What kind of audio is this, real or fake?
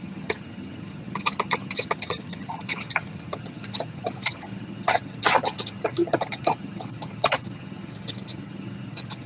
fake